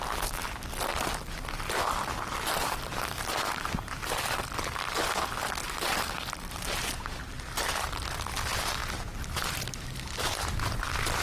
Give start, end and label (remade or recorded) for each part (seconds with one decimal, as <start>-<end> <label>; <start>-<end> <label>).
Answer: 0.0-11.2 recorded